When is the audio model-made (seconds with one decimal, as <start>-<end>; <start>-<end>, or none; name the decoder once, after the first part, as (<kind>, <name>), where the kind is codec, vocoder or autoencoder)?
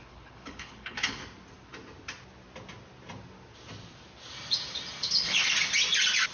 0.0-1.2 (codec, HILCodec); 5.0-5.4